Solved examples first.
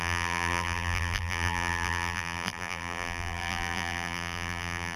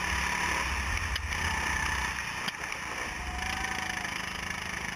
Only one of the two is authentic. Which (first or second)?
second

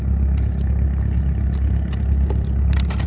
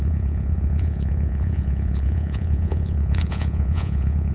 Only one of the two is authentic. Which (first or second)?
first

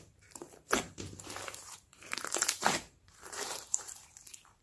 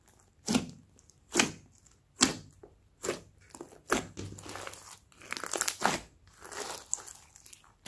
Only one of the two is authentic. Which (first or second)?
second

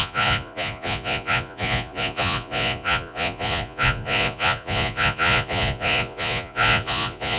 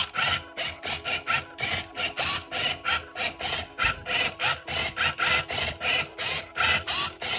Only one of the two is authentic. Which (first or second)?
second